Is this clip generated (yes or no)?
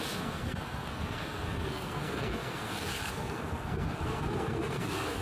yes